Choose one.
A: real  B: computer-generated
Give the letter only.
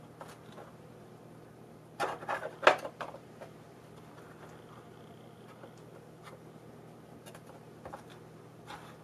A